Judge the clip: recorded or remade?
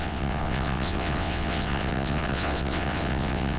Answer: remade